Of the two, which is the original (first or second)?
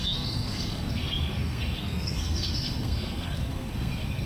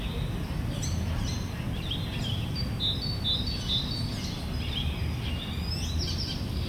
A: second